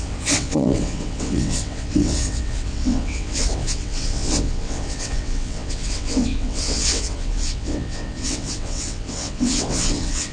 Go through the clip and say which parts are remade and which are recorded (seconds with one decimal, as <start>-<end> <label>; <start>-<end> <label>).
0.0-10.3 remade